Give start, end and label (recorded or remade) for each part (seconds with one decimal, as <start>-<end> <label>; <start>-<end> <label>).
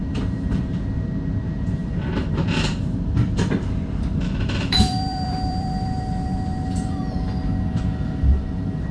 0.0-0.8 remade; 0.8-1.8 recorded; 1.8-7.0 remade; 7.0-8.9 recorded